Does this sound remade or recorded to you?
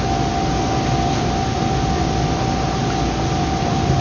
recorded